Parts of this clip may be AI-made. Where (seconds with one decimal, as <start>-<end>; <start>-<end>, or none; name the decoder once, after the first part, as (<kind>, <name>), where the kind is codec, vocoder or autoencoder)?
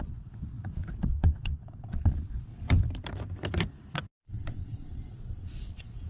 0.0-2.5 (vocoder, Vocos); 4.2-6.1